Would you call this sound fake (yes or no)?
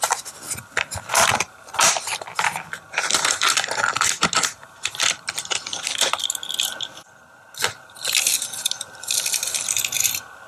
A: no